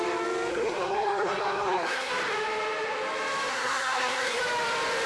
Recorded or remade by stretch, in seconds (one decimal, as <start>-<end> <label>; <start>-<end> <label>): 0.0-0.5 recorded; 0.5-2.1 remade; 2.1-3.5 recorded; 3.5-4.4 remade; 4.4-5.1 recorded